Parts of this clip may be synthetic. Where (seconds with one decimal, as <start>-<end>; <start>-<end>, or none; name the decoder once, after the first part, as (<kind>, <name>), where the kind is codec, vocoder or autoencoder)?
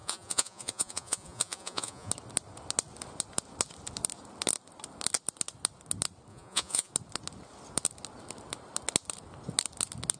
0.0-2.1 (vocoder, Vocos); 6.3-6.9